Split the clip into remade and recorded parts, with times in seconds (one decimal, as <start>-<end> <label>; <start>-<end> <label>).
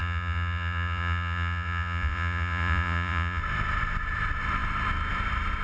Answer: 0.0-3.4 remade; 3.4-5.6 recorded